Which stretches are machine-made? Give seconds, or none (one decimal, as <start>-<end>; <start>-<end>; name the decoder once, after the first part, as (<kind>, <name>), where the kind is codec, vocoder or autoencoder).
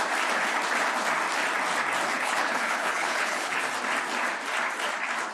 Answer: 2.1-3.6 (codec, HILCodec)